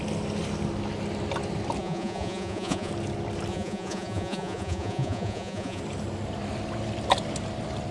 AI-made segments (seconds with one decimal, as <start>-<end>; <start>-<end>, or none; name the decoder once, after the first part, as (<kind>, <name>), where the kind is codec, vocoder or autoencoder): 1.8-2.9 (vocoder, Vocos); 3.5-5.8